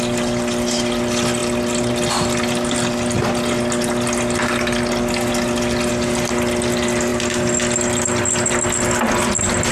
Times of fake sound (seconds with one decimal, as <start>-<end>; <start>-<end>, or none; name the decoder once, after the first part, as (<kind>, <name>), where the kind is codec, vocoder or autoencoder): none